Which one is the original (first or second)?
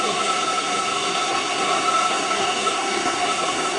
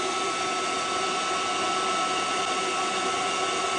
second